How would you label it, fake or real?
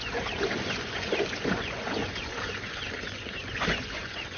fake